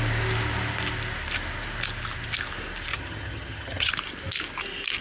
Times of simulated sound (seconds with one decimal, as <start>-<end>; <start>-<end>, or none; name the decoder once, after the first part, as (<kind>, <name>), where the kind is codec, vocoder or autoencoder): 2.9-3.9 (vocoder, HiFi-GAN)